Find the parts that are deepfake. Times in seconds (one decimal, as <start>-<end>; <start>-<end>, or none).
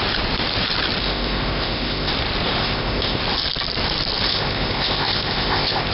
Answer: 1.0-2.1; 2.6-3.2; 4.3-5.9